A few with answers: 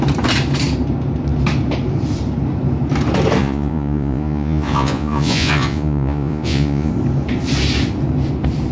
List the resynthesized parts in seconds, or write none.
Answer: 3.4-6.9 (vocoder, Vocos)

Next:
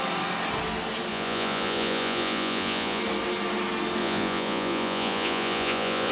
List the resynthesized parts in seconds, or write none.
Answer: 1.1-3.0 (vocoder, Vocos); 4.0-6.1

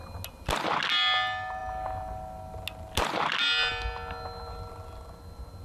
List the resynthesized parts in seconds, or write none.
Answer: none

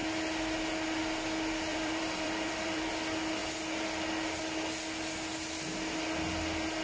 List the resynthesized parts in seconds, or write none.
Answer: 1.7-2.9 (vocoder, BigVGAN v2)

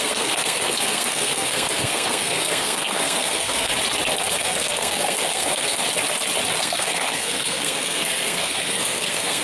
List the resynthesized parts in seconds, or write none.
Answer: 0.0-3.7 (codec, SNAC); 4.3-5.8; 6.6-9.4